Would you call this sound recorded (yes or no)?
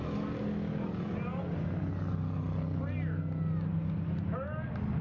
yes